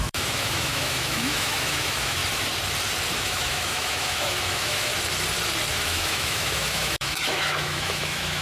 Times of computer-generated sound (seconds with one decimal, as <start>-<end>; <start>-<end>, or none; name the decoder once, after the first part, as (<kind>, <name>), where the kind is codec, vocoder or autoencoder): 0.0-2.2 (autoencoder, DAC-VAE); 3.1-4.9; 5.7-8.4